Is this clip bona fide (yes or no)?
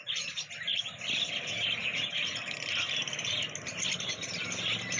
yes